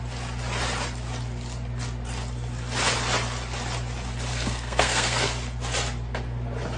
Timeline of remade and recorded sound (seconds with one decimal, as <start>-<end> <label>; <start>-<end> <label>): 0.0-4.3 recorded; 4.3-5.3 remade; 5.3-6.8 recorded